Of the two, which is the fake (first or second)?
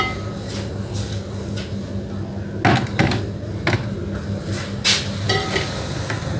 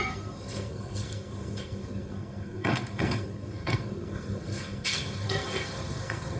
second